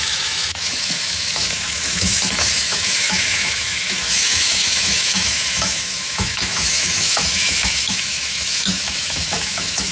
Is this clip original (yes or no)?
no